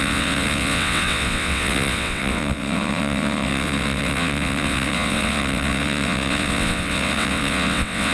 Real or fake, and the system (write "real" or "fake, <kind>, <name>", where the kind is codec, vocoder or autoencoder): fake, vocoder, WaveNeXt